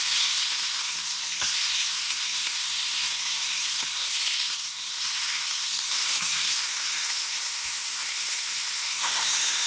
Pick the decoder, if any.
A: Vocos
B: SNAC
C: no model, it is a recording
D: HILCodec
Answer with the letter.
B